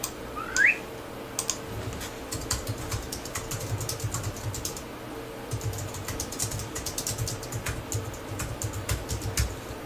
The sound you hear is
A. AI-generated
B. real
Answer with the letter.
B